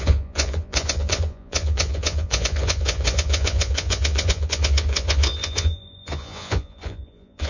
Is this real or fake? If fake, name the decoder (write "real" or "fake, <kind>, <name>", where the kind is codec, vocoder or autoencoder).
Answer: fake, vocoder, Vocos